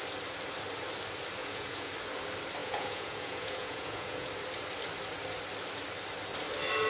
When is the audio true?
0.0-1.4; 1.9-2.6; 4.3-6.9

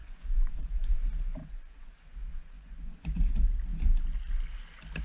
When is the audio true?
1.0-1.4; 1.9-2.3; 3.2-5.0